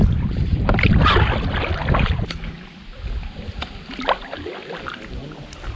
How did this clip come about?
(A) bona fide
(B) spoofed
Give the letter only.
A